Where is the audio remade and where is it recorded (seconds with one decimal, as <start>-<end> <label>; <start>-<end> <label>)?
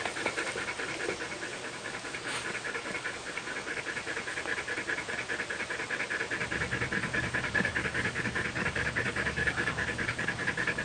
0.0-1.5 recorded; 1.5-3.8 remade; 3.8-7.0 recorded; 7.0-10.8 remade